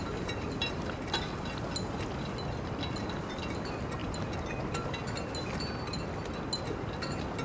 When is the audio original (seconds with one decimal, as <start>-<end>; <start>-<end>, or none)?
0.0-7.4